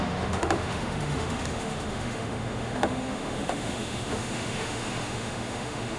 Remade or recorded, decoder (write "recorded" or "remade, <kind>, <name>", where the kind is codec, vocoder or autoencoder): remade, autoencoder, DAC-VAE